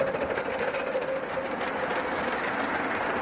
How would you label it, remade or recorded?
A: recorded